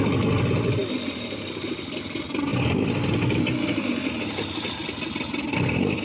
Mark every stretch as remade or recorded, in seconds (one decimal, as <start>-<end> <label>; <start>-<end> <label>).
0.0-6.0 recorded